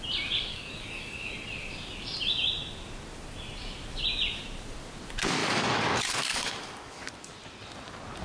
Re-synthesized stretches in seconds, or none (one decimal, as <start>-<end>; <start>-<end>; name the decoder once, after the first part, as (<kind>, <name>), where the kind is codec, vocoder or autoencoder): 0.5-1.3 (codec, DAC); 5.4-7.1